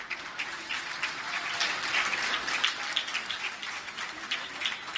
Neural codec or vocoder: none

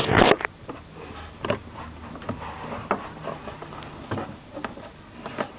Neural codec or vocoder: none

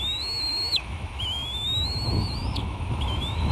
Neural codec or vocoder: autoencoder, DAC-VAE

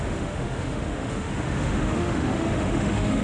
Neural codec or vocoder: autoencoder, DAC-VAE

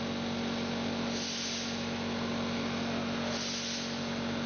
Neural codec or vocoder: none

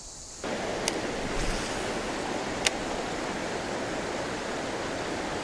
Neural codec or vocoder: none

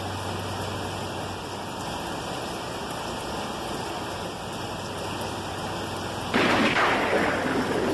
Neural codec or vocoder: none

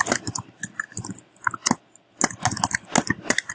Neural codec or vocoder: none